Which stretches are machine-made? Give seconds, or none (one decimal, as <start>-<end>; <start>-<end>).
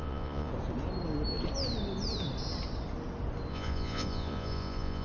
0.0-0.5; 3.5-5.0